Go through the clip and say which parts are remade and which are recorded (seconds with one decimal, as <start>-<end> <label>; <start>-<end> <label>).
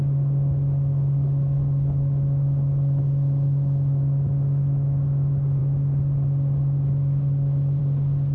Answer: 0.0-8.3 recorded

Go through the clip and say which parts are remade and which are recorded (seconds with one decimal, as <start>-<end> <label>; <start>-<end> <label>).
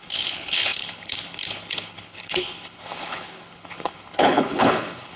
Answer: 0.0-5.2 remade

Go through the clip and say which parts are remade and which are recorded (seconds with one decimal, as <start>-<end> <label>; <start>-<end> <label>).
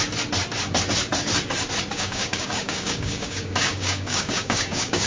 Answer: 0.0-1.9 recorded; 1.9-5.1 remade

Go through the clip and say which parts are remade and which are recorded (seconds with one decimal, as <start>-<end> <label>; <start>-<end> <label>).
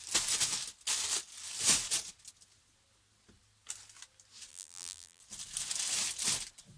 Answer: 0.0-4.5 recorded; 4.5-5.2 remade; 5.2-6.8 recorded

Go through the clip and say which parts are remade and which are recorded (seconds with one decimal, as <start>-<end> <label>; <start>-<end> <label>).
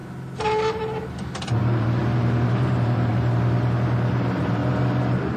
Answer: 0.0-1.6 recorded; 1.6-2.0 remade; 2.0-2.6 recorded; 2.6-3.1 remade; 3.1-4.1 recorded; 4.1-4.6 remade; 4.6-5.4 recorded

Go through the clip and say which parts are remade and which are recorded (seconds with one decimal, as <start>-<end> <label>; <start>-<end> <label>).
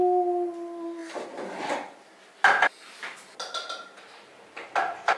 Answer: 0.0-5.2 recorded